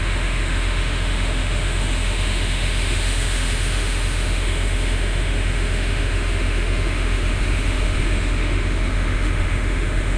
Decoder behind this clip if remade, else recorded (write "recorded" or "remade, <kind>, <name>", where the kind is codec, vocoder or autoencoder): remade, autoencoder, DAC-VAE